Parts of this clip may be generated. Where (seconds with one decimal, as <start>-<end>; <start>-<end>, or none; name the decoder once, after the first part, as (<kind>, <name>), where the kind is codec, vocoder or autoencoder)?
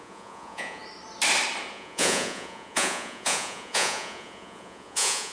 0.0-0.8 (vocoder, Vocos); 1.7-5.3